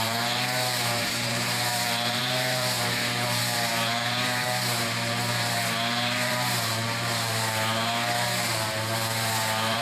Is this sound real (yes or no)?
no